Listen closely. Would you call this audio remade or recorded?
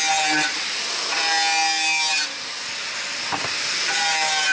recorded